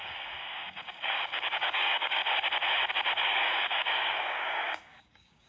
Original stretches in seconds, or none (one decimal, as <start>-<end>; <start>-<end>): 2.2-3.2